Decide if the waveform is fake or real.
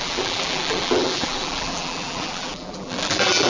fake